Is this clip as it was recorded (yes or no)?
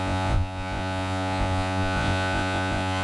no